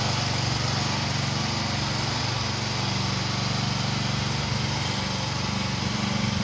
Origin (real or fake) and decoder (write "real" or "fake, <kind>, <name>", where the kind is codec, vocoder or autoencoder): real